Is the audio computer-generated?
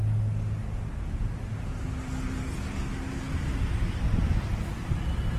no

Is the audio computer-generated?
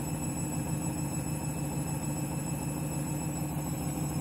yes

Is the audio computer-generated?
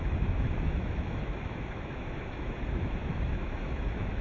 yes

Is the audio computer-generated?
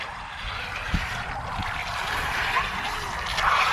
no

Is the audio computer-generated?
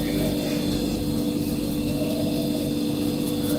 no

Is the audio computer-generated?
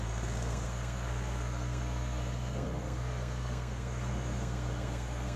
yes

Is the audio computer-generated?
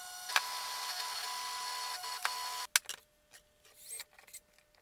no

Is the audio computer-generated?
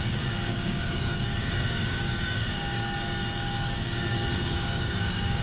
yes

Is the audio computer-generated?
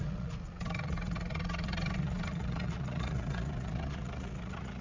yes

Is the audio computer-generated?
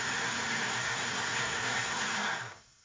yes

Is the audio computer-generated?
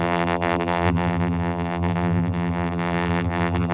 yes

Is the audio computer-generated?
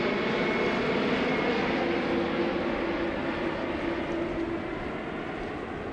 no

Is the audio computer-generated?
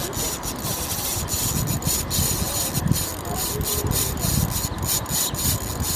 no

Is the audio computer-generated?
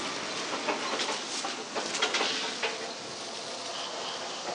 no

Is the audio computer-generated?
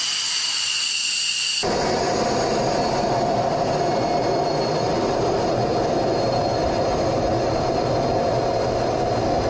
no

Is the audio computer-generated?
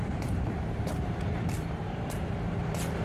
yes